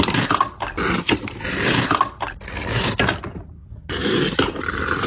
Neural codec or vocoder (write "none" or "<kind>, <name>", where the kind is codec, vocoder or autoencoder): none